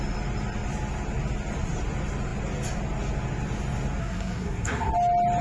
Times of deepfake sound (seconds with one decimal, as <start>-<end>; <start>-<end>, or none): 4.0-4.9